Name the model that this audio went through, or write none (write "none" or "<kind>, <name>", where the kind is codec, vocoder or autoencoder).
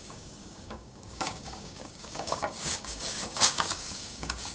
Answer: codec, DAC